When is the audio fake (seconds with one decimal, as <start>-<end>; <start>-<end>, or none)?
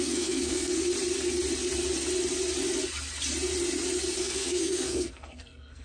0.0-0.7; 4.2-5.8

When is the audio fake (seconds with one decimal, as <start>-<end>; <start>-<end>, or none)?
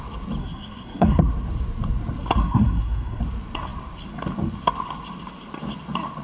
0.4-1.2; 2.4-3.2